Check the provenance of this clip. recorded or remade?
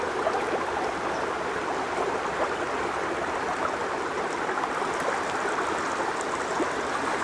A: remade